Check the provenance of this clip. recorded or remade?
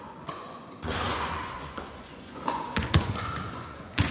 remade